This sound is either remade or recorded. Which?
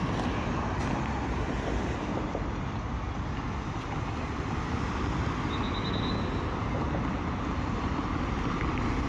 recorded